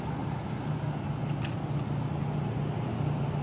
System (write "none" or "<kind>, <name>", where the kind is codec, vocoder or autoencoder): none